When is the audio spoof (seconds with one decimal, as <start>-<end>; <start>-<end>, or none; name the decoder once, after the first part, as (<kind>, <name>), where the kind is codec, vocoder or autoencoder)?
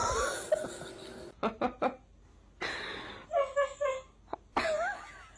none